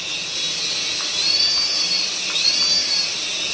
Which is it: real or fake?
real